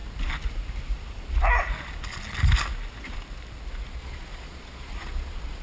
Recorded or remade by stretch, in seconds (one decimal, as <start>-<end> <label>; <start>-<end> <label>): 0.0-4.0 recorded; 4.0-5.6 remade